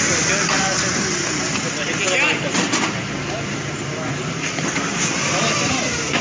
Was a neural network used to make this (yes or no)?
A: no